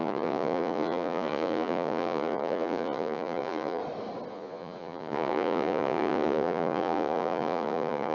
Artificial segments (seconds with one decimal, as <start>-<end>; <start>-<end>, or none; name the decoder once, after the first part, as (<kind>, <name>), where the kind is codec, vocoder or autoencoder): 0.0-3.8 (vocoder, Vocos); 4.3-8.1

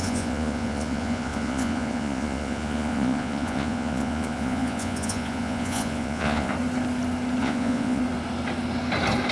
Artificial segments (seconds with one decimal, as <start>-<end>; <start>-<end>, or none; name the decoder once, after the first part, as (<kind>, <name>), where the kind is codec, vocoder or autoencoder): 0.0-6.5 (vocoder, Vocos); 7.4-8.0